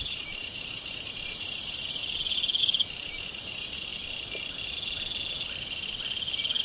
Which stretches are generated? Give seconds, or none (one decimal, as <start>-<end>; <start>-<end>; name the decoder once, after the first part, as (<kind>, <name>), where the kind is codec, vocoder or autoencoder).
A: 0.0-2.0 (vocoder, BigVGAN v2); 2.6-3.9